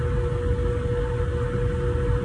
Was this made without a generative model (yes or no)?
yes